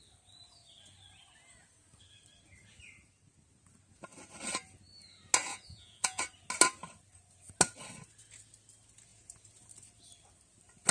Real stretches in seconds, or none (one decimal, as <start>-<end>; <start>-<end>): 0.0-5.5; 6.2-10.9